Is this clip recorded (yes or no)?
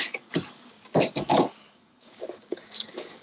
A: no